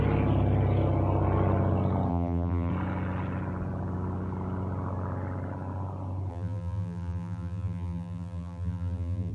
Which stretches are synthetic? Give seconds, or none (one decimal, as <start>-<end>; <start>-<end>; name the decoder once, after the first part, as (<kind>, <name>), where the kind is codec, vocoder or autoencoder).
2.1-2.7 (vocoder, BigVGAN v2); 6.3-9.3